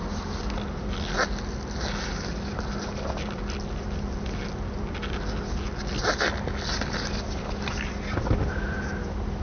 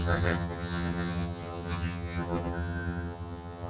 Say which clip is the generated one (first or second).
second